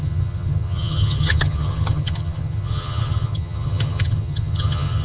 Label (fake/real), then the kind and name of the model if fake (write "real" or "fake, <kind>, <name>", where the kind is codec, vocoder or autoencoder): fake, vocoder, HiFi-GAN